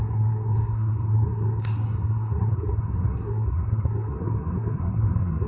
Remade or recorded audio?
remade